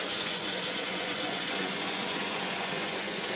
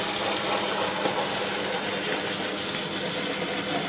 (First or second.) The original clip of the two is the second